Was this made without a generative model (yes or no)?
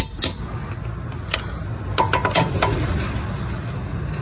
yes